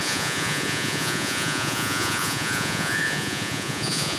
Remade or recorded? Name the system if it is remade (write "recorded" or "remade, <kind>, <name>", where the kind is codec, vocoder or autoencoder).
remade, vocoder, Vocos